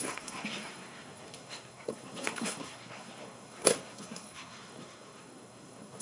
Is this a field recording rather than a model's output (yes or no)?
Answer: no